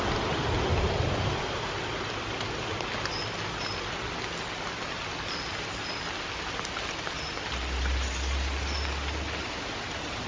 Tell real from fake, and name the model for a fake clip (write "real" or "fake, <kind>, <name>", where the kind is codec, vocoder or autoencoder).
real